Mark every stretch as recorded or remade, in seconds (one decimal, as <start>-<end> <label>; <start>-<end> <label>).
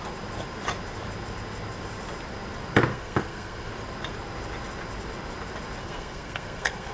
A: 0.0-2.9 recorded; 2.9-3.7 remade; 3.7-5.8 recorded; 5.8-6.9 remade